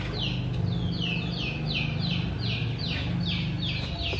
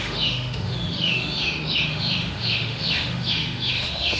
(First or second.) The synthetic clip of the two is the second